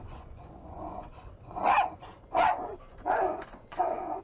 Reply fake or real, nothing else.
fake